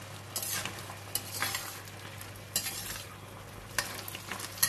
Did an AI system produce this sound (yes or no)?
no